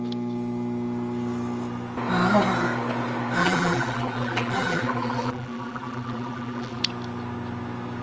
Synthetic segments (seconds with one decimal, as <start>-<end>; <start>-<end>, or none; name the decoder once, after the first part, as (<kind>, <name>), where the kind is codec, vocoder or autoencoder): 3.4-6.8 (vocoder, BigVGAN v2)